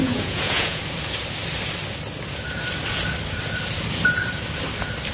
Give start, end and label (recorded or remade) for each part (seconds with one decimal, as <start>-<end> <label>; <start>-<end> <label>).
0.0-0.8 remade; 0.8-5.1 recorded